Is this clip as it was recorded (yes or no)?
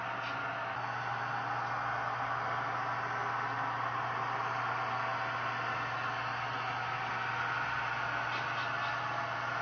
yes